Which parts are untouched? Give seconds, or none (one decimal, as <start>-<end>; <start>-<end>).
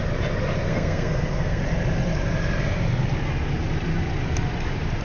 0.0-0.7; 1.6-5.0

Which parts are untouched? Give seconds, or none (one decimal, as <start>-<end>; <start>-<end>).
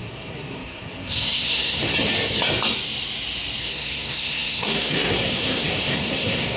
1.9-3.6